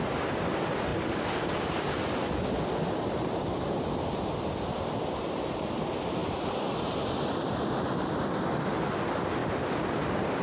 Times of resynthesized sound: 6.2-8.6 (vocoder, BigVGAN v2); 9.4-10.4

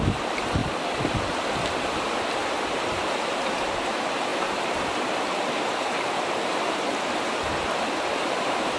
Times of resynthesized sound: 0.0-0.6 (vocoder, BigVGAN v2); 2.6-8.8